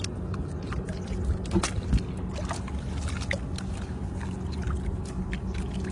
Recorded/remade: recorded